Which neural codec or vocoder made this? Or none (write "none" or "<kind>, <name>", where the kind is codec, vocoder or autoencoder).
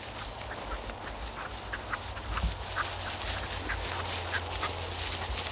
none